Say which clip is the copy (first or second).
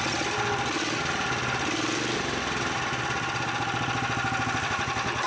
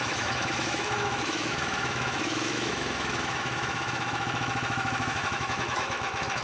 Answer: second